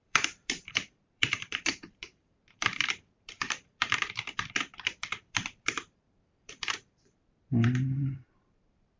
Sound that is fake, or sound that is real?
fake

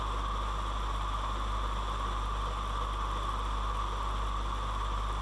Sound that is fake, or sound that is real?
real